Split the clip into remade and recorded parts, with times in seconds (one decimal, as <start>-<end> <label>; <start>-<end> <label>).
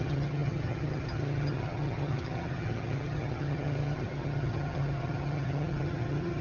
0.0-6.4 remade